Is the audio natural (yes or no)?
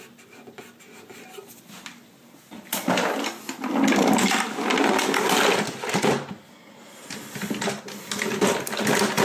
yes